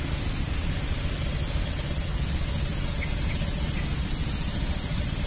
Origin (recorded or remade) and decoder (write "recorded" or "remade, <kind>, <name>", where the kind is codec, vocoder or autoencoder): recorded